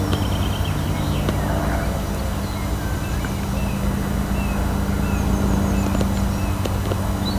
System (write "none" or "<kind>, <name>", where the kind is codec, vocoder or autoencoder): none